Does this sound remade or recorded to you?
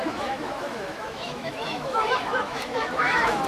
remade